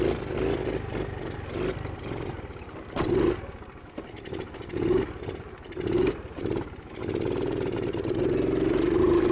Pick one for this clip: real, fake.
real